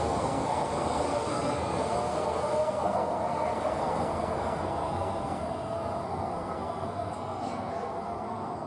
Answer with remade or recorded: remade